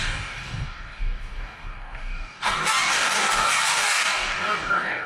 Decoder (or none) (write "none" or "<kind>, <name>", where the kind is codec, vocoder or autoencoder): codec, DAC